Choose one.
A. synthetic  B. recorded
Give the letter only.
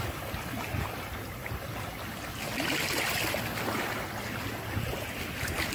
B